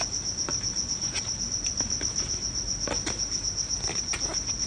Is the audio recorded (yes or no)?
yes